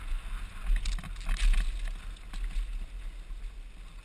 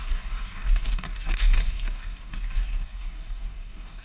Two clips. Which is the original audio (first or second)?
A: first